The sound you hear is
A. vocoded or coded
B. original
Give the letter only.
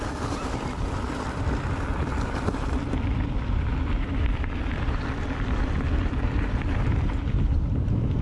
A